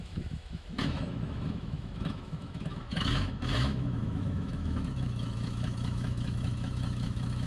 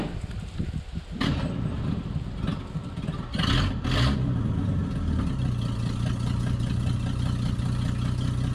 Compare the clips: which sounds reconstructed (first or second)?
first